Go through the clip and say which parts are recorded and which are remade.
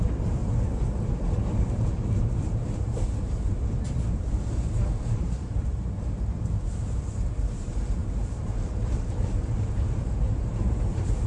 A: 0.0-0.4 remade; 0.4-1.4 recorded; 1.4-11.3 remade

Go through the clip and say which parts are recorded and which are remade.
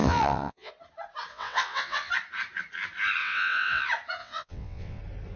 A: 0.0-0.7 remade; 0.7-1.3 recorded; 1.3-2.1 remade; 2.1-3.2 recorded; 3.2-3.8 remade; 3.8-4.2 recorded; 4.2-5.0 remade; 5.0-5.4 recorded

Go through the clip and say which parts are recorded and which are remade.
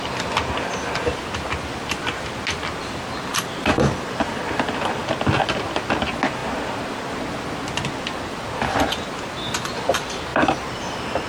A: 0.0-3.3 recorded; 3.3-5.0 remade; 5.0-10.3 recorded; 10.3-11.3 remade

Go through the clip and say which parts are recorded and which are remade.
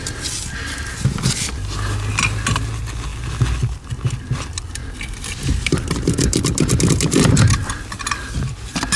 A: 0.0-9.0 recorded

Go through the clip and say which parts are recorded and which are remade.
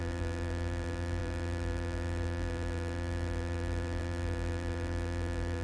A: 0.0-5.6 remade